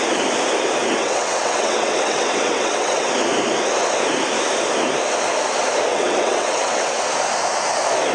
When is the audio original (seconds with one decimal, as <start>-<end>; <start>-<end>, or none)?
0.0-1.0; 3.1-5.9; 7.0-8.1